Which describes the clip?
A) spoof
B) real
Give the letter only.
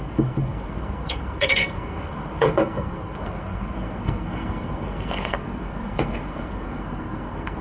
A